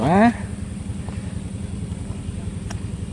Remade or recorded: remade